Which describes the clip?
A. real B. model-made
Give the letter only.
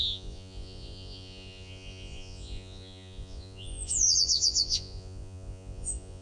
B